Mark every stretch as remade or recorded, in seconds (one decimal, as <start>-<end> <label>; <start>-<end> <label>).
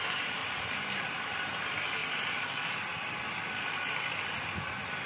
0.0-0.4 recorded; 0.4-1.3 remade; 1.3-5.1 recorded